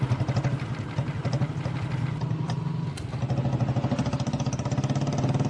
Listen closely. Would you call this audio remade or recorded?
recorded